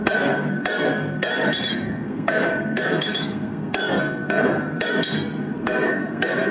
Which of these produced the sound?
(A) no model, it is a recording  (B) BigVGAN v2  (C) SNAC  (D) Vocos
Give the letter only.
C